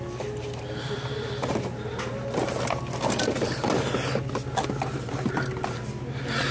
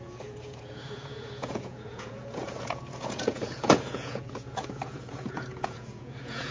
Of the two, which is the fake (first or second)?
second